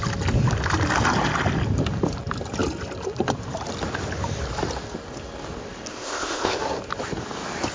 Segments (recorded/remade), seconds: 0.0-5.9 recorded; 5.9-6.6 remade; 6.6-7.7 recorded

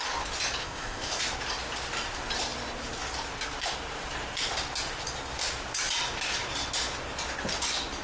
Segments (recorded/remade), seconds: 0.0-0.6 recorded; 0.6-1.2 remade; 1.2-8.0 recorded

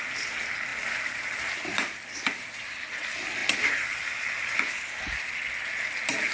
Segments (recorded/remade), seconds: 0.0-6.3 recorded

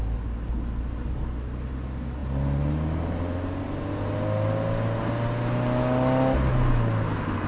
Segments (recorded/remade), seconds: 0.0-7.5 recorded